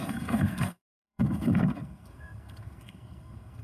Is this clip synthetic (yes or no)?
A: yes